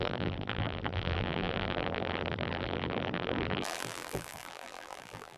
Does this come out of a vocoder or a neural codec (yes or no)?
yes